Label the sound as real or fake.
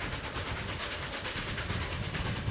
fake